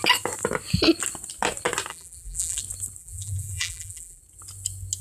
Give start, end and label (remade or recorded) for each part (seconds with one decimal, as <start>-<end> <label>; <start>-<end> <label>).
0.0-1.9 recorded; 1.9-2.6 remade; 2.6-3.0 recorded; 3.0-4.2 remade; 4.2-5.0 recorded